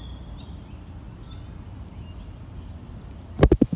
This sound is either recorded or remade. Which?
recorded